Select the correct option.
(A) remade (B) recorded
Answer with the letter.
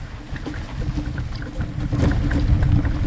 B